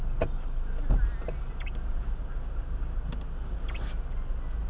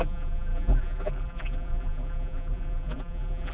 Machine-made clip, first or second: second